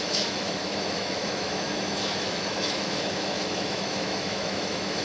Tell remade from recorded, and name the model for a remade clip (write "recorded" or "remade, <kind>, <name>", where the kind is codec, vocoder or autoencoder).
remade, autoencoder, DAC-VAE